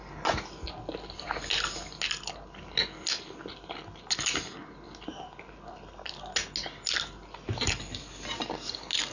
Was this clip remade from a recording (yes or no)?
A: no